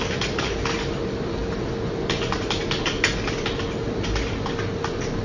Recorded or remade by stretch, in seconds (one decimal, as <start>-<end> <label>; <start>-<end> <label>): 0.0-5.2 recorded